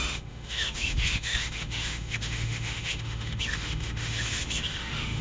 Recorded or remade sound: remade